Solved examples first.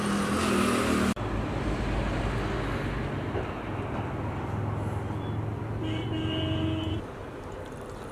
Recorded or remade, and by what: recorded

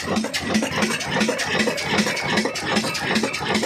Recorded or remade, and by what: recorded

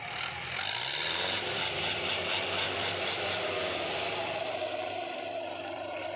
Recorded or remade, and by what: remade, vocoder, BigVGAN v2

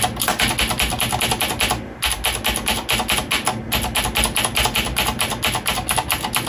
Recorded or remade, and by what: recorded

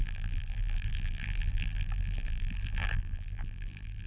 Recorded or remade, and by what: remade, vocoder, BigVGAN v2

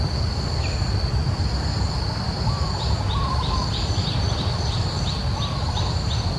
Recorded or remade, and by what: remade, vocoder, BigVGAN v2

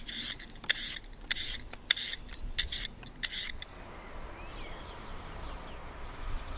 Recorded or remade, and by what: recorded